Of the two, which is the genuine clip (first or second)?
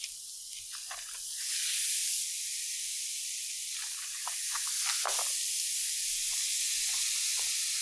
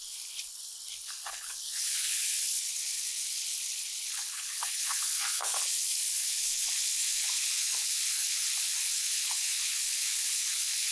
first